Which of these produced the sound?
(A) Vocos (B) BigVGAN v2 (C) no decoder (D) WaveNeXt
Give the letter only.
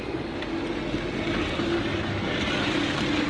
C